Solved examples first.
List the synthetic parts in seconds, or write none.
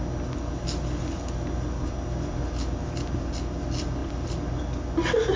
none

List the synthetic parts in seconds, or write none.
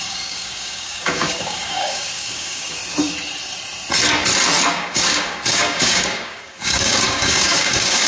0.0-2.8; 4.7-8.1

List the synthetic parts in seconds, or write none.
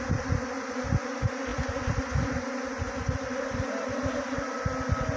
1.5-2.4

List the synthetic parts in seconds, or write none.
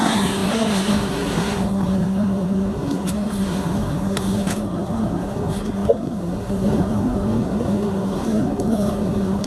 0.0-9.5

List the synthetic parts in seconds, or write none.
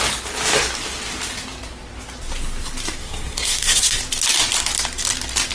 3.0-4.0